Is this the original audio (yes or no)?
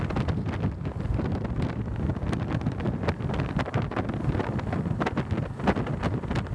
yes